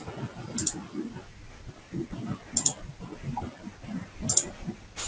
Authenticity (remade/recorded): recorded